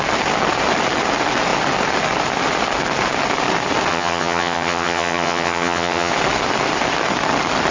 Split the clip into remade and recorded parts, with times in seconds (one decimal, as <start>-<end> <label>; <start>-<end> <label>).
0.0-3.9 recorded; 3.9-6.1 remade; 6.1-7.7 recorded